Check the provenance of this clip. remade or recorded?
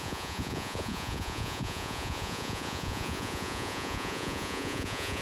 remade